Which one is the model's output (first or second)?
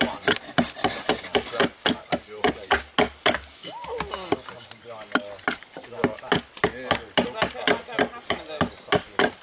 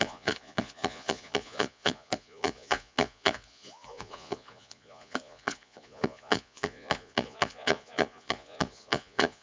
second